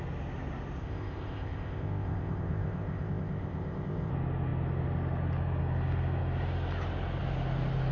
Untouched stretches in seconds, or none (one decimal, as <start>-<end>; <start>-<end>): 0.0-0.8; 4.1-7.9